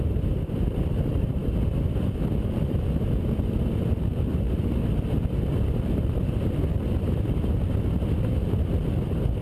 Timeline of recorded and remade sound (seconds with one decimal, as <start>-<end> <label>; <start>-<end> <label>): 0.0-1.4 remade; 1.4-2.0 recorded; 2.0-4.8 remade; 4.8-8.0 recorded; 8.0-9.4 remade